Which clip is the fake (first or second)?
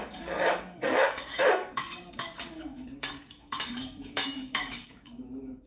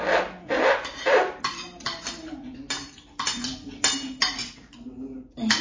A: first